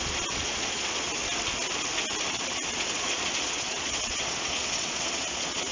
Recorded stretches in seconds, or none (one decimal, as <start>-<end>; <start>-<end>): 1.1-2.3